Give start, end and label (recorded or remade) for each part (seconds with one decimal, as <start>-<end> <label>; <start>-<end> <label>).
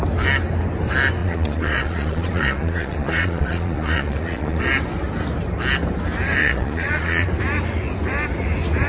0.0-1.2 recorded; 1.2-4.6 remade; 4.6-6.4 recorded; 6.4-7.3 remade; 7.3-8.9 recorded